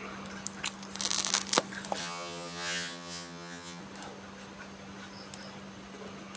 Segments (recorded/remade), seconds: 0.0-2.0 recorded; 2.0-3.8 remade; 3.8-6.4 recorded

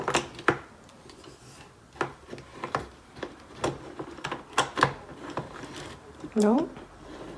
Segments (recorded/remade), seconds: 0.0-2.5 recorded; 2.5-3.5 remade; 3.5-5.1 recorded; 5.1-6.6 remade; 6.6-7.4 recorded

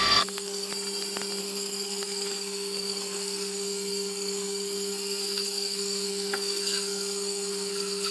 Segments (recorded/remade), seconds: 0.0-0.7 remade; 0.7-1.4 recorded; 1.4-8.1 remade

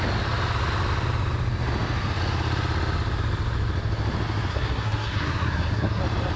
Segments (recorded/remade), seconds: 0.0-4.5 recorded; 4.5-6.0 remade; 6.0-6.4 recorded

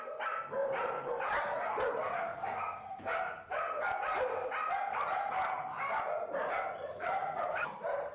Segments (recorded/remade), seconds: 0.0-0.6 recorded; 0.6-1.3 remade; 1.3-6.4 recorded; 6.4-8.1 remade

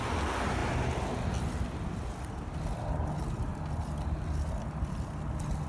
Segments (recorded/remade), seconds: 0.0-5.7 recorded